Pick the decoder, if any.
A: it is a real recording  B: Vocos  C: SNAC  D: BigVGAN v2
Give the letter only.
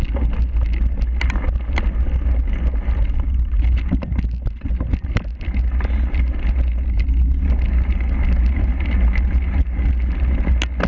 A